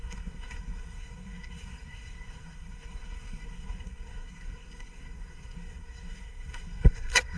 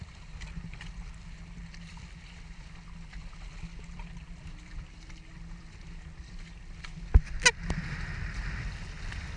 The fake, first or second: first